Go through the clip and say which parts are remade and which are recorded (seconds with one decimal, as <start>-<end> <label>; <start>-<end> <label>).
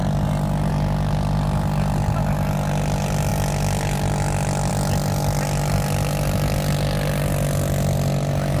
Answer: 0.0-8.6 recorded